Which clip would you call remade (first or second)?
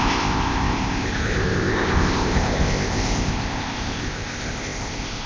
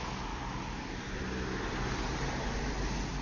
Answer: first